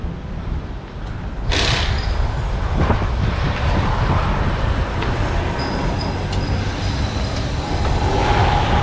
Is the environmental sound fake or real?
real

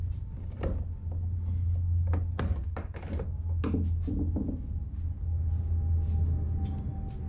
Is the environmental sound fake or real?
real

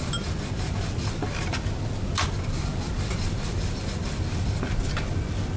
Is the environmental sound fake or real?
real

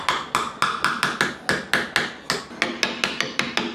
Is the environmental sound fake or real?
real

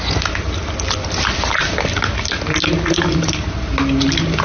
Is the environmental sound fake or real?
real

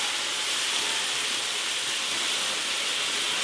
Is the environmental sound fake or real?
real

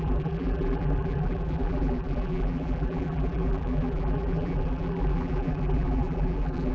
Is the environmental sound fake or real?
fake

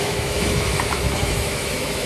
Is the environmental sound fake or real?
fake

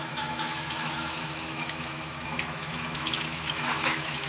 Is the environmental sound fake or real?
fake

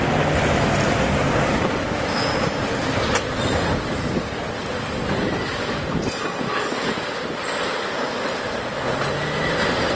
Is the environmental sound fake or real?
real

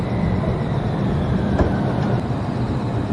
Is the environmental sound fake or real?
fake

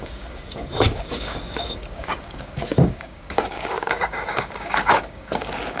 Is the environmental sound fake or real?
fake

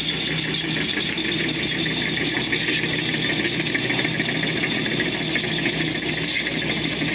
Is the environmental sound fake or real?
real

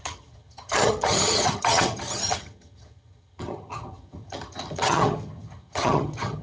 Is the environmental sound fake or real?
fake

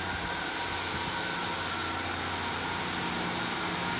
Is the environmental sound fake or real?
real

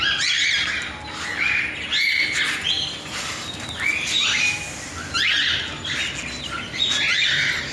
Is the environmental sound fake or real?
real